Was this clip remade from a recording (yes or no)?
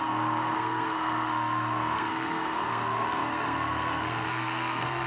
yes